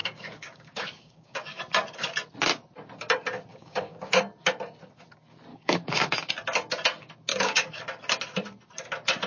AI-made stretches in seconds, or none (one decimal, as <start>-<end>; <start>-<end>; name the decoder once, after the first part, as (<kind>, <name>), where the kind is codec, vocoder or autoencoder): 0.0-1.6 (codec, DAC); 3.5-4.2; 5.5-6.3; 7.3-7.8